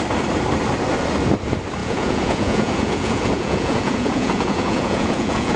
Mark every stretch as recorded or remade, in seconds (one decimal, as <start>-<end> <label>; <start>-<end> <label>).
0.0-1.8 recorded; 1.8-5.6 remade